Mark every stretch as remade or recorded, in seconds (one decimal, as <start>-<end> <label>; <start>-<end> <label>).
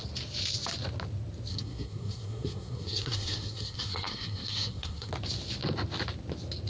0.0-1.5 recorded; 1.5-5.1 remade; 5.1-6.7 recorded